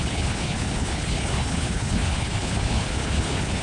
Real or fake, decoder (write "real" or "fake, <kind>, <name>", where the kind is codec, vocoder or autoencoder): fake, codec, HILCodec